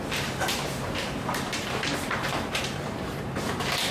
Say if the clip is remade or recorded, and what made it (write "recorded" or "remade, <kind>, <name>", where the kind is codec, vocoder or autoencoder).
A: remade, vocoder, BigVGAN v2